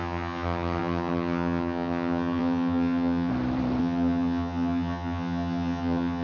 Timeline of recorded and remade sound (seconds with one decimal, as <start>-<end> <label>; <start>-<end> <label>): 0.0-3.3 remade; 3.3-3.8 recorded; 3.8-6.2 remade